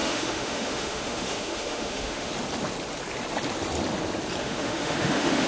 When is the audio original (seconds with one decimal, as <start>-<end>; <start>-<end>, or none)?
2.3-4.4